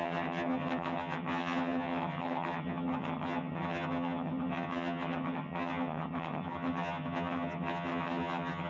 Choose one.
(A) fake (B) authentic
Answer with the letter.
A